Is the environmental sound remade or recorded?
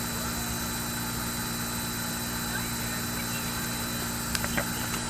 recorded